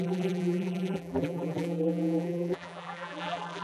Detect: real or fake fake